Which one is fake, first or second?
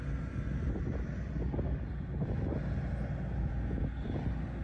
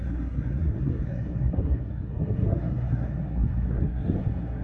second